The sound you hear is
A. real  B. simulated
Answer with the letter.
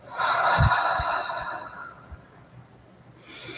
A